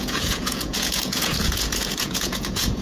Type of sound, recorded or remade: remade